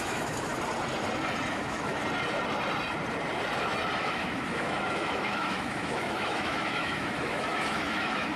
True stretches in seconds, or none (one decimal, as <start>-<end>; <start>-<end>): 0.5-1.5; 2.0-4.0